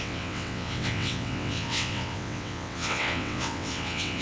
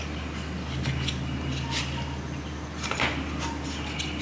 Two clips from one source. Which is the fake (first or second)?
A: first